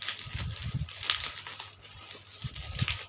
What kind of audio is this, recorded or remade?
recorded